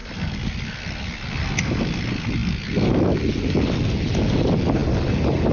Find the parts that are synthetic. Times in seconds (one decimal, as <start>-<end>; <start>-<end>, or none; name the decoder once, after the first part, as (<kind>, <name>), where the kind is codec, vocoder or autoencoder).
none